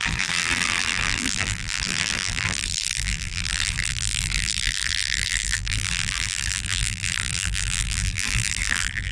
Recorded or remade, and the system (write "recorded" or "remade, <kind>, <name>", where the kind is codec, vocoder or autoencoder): remade, vocoder, BigVGAN v2